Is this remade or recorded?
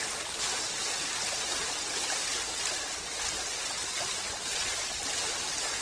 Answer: recorded